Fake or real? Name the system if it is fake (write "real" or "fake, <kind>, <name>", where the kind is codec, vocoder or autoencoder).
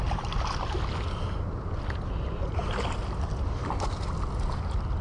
real